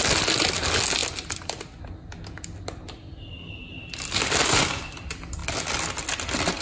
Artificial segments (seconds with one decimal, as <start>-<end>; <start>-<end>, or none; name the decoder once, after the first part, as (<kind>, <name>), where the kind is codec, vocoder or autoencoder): none